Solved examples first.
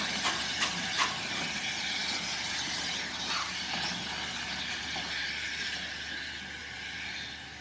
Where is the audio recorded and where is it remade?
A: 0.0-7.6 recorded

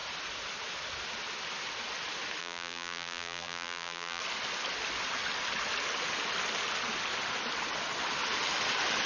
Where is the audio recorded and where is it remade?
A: 0.0-2.4 recorded; 2.4-4.2 remade; 4.2-9.1 recorded

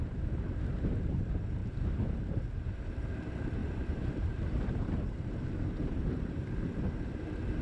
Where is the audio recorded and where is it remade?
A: 0.0-1.6 recorded; 1.6-2.9 remade; 2.9-3.6 recorded; 3.6-6.5 remade; 6.5-7.6 recorded

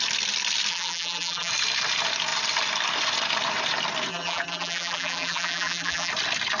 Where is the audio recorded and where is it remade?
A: 0.0-0.7 recorded; 0.7-1.5 remade; 1.5-4.1 recorded; 4.1-6.1 remade; 6.1-6.6 recorded